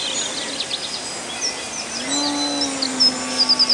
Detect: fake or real real